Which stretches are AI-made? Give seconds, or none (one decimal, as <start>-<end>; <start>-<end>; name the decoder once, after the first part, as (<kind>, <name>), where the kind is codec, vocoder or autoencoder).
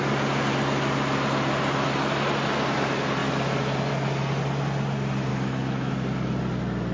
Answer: 5.3-5.9 (autoencoder, DAC-VAE)